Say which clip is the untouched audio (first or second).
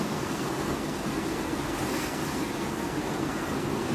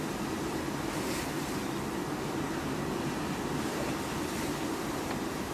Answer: second